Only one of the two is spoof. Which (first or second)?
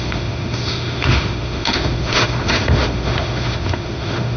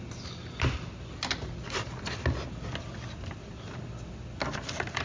first